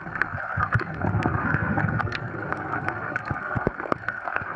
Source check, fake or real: fake